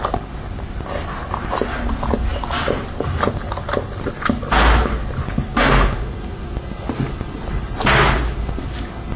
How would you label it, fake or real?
real